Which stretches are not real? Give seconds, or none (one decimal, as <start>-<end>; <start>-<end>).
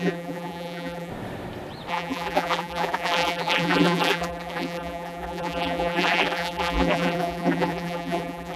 0.0-1.1; 1.9-8.6